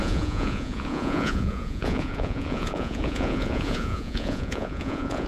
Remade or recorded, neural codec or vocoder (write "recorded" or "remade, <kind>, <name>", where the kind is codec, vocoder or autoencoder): remade, vocoder, Vocos